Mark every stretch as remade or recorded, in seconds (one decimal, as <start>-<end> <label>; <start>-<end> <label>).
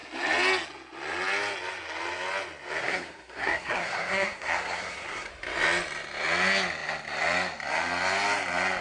0.0-2.8 recorded; 2.8-5.3 remade; 5.3-8.8 recorded